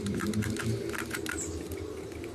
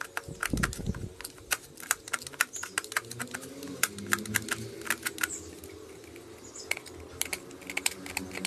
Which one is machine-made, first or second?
first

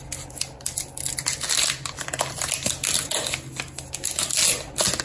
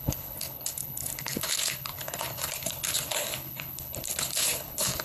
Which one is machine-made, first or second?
second